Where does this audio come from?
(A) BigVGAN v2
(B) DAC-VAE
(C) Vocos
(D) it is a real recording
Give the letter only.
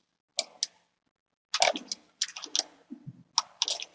D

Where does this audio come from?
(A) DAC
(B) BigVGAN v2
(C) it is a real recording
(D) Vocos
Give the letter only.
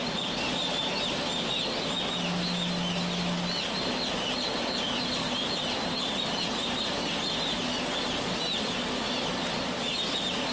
C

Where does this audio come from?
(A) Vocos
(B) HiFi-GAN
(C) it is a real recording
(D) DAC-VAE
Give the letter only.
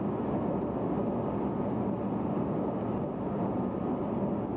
C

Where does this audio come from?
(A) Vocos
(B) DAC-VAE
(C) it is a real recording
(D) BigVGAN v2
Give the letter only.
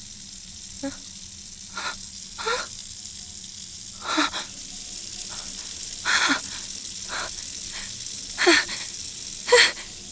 C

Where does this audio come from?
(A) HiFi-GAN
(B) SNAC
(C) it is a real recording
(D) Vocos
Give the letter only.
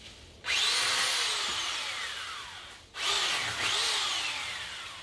C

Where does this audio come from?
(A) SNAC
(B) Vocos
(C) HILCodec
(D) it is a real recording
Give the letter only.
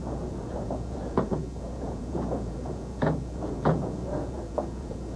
B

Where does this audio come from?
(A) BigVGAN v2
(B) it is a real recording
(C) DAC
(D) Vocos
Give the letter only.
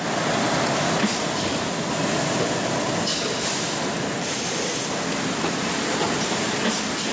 B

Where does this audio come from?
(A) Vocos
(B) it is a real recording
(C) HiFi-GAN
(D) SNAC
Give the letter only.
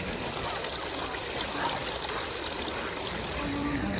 B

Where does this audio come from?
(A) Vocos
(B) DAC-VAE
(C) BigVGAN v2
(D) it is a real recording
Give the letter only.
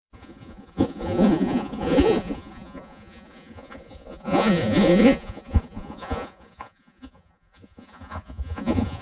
A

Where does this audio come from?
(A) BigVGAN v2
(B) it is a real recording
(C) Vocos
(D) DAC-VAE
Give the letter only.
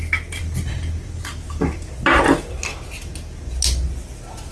B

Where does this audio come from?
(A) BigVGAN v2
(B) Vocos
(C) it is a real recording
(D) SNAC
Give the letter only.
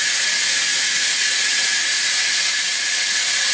B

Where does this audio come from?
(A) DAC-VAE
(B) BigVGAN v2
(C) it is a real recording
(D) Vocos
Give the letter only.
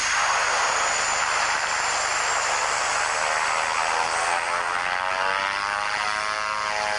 C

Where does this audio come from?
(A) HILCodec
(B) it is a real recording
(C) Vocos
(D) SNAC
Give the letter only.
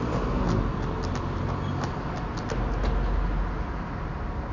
B